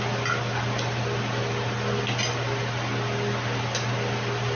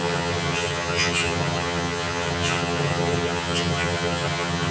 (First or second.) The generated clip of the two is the second